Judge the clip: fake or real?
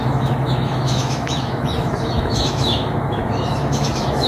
fake